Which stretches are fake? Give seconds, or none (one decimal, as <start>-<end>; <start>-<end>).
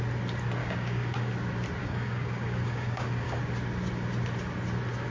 0.6-1.3; 1.8-3.4